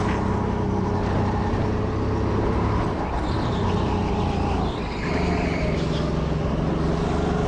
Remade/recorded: recorded